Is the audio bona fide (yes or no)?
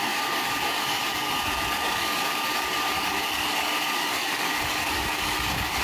no